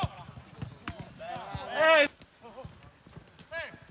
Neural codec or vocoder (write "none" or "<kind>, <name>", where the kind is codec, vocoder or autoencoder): none